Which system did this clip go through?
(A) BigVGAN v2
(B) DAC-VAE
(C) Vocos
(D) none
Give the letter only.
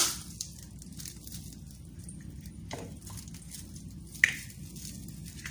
D